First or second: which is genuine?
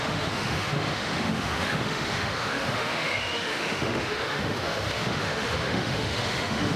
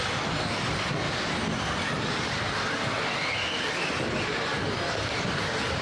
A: second